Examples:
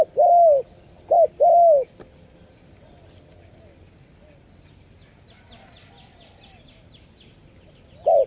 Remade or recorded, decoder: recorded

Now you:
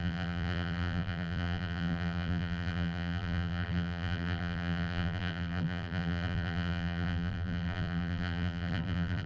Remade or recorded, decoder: remade, vocoder, BigVGAN v2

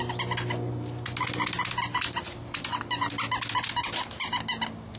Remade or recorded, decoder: recorded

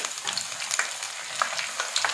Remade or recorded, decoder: recorded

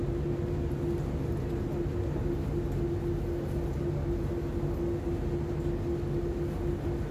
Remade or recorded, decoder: recorded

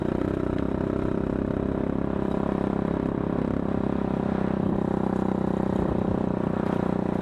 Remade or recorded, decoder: recorded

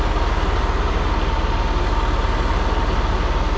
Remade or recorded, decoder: recorded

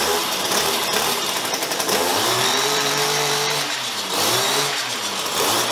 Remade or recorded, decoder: remade, vocoder, BigVGAN v2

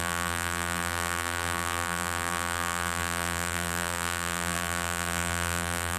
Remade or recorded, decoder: remade, vocoder, BigVGAN v2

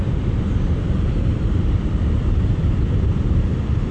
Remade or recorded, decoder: remade, vocoder, BigVGAN v2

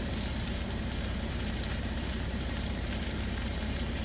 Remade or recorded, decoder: remade, vocoder, BigVGAN v2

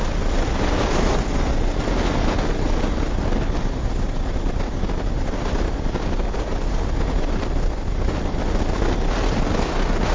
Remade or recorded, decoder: recorded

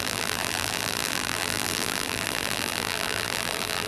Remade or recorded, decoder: remade, vocoder, BigVGAN v2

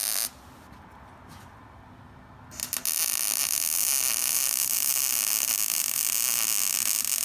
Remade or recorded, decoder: recorded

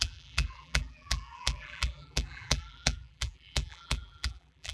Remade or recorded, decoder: remade, vocoder, BigVGAN v2